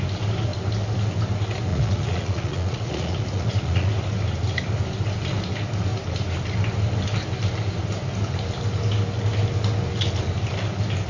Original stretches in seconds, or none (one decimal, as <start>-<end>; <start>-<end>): 0.0-1.7; 3.9-11.1